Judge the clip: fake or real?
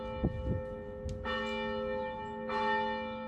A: real